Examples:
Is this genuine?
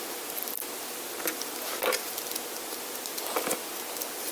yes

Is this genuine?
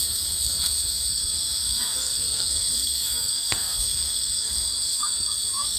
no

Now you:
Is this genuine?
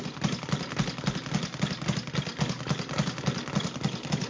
yes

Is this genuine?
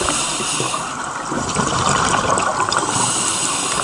yes